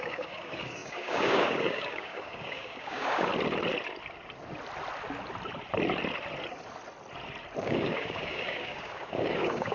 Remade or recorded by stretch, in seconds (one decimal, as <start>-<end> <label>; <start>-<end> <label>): 0.0-3.3 remade; 3.3-7.6 recorded; 7.6-9.7 remade